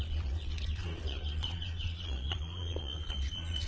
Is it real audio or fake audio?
fake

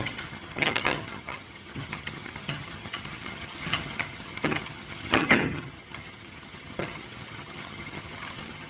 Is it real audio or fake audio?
fake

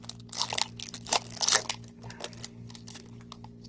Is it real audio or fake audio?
real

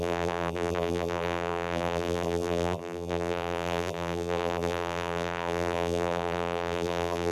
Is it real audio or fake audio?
fake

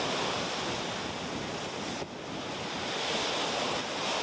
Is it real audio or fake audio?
real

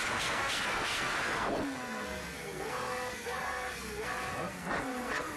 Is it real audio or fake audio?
fake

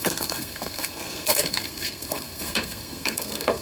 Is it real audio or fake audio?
fake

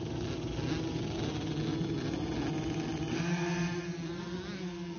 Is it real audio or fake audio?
real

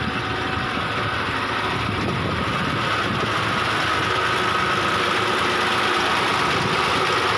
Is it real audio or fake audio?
real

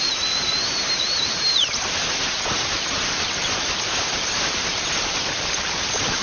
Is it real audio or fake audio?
fake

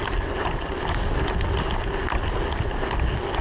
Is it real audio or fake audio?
real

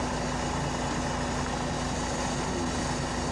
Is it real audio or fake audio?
real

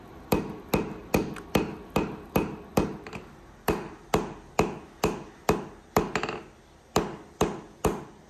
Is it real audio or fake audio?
real